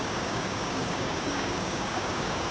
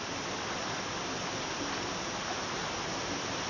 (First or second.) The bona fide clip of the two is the second